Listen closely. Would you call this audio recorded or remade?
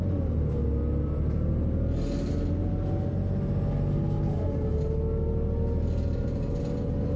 recorded